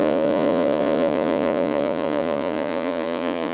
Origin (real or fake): fake